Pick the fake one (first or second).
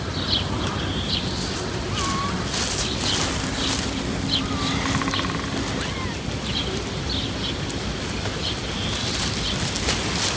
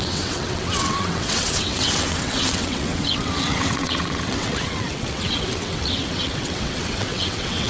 second